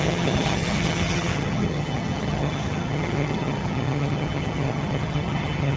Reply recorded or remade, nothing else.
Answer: remade